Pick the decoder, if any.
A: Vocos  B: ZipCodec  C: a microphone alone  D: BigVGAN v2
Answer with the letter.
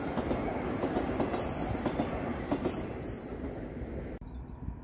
C